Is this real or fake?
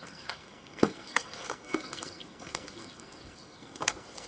fake